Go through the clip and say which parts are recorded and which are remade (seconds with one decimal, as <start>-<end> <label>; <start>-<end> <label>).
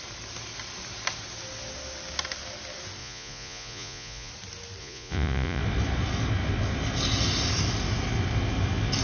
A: 0.0-3.0 recorded; 3.0-4.3 remade; 4.3-4.8 recorded; 4.8-5.6 remade; 5.6-9.0 recorded